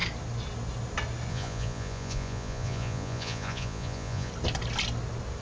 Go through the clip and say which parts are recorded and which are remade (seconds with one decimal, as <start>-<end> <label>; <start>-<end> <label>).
0.0-1.3 recorded; 1.3-4.3 remade; 4.3-5.4 recorded